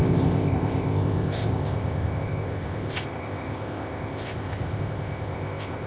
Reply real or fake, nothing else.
fake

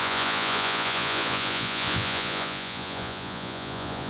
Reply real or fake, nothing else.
fake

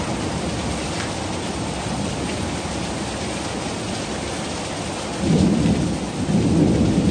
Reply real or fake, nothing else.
real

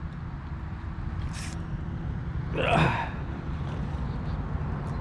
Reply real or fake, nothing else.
real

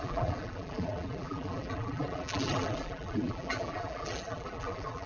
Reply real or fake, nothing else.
fake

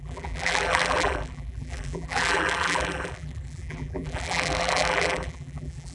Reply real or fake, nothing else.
fake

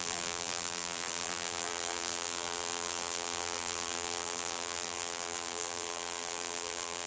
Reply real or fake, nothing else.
fake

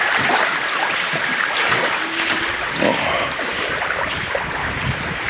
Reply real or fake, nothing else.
real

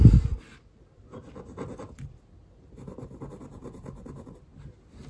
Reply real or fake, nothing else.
real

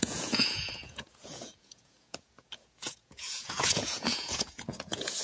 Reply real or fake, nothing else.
fake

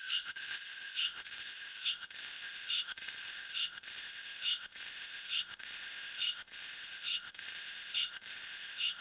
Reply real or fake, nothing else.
fake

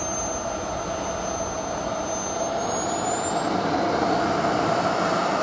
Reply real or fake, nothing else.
real